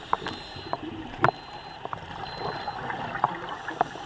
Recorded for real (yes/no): yes